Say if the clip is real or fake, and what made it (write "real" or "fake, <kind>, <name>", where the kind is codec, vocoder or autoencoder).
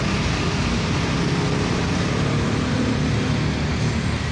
real